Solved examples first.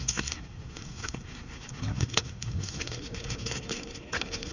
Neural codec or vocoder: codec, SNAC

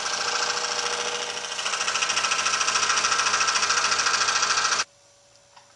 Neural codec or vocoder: none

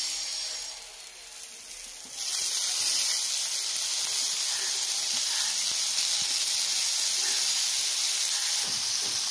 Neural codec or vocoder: none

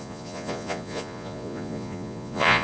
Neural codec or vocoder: vocoder, Vocos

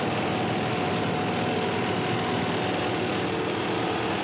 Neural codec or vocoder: none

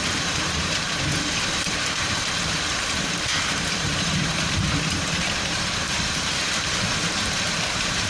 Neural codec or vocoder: vocoder, BigVGAN v2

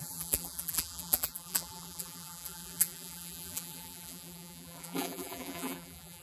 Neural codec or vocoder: vocoder, BigVGAN v2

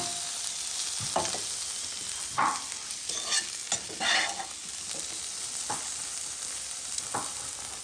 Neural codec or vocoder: none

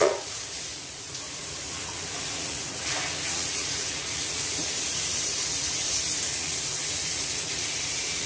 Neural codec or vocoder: vocoder, Vocos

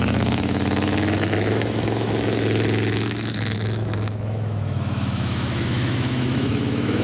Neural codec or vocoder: autoencoder, DAC-VAE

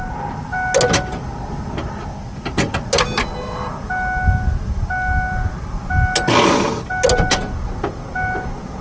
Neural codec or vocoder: none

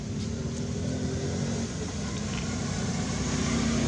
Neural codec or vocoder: none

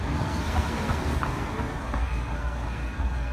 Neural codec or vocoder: codec, SNAC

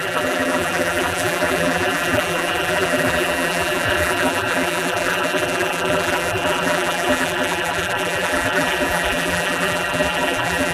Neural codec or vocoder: vocoder, BigVGAN v2